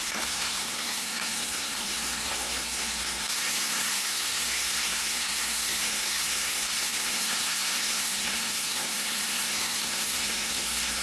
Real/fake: fake